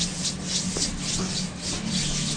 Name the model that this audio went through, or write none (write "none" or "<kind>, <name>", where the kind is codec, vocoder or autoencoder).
none